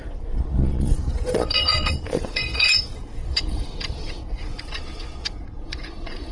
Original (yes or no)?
no